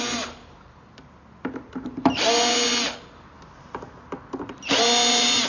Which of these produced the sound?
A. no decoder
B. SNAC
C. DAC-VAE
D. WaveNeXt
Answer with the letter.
A